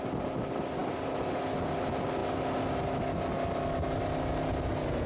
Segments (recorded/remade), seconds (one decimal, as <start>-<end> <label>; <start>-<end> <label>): 0.0-5.1 recorded